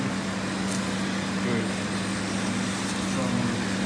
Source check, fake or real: real